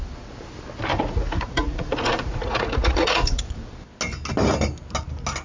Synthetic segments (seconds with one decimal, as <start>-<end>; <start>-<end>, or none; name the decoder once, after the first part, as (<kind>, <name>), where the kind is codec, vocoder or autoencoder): 0.9-3.6 (vocoder, Vocos)